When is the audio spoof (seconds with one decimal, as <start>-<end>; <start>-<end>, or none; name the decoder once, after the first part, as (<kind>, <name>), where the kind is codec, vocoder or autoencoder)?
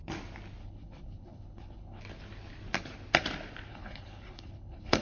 0.6-2.0 (codec, HILCodec); 3.7-5.0